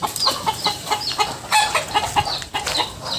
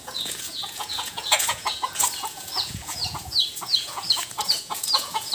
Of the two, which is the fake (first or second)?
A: second